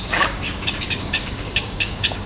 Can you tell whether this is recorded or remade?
remade